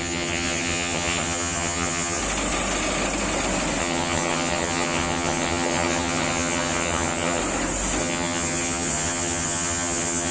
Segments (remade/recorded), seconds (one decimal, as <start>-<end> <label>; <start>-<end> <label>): 0.0-2.2 remade; 2.2-3.8 recorded; 3.8-7.4 remade; 7.4-8.0 recorded; 8.0-10.3 remade